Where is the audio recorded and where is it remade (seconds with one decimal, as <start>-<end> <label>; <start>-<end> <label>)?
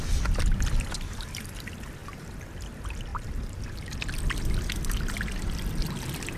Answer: 0.0-2.0 recorded; 2.0-2.6 remade; 2.6-3.1 recorded; 3.1-3.6 remade; 3.6-6.4 recorded